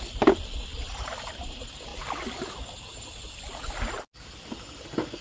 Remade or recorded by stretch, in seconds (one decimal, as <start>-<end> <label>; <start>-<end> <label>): 0.0-5.2 recorded